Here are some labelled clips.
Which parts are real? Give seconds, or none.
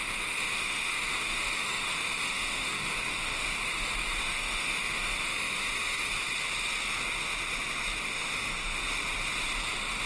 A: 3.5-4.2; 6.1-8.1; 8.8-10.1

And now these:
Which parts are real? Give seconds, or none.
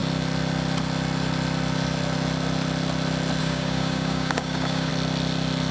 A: 0.0-3.4; 4.9-5.7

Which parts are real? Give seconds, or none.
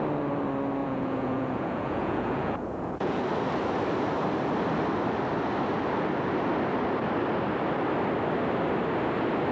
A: 0.0-0.8; 3.2-9.5